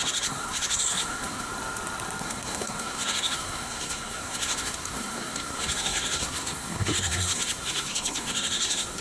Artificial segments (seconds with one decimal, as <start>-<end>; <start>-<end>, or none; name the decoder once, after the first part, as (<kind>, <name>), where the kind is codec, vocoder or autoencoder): 0.0-1.5 (codec, SNAC); 2.2-9.0